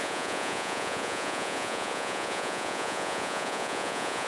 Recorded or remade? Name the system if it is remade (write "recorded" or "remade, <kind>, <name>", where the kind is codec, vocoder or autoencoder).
remade, vocoder, Vocos